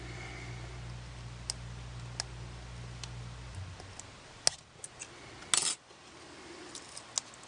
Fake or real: real